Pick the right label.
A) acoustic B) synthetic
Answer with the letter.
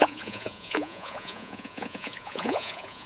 B